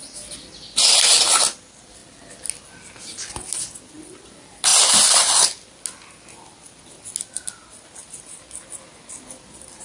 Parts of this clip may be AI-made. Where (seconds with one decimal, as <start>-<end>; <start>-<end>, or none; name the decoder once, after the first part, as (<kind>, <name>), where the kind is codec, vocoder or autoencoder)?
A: none